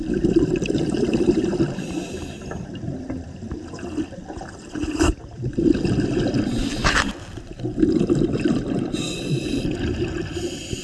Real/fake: fake